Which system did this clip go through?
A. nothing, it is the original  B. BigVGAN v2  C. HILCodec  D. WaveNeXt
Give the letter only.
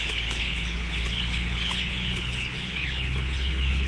C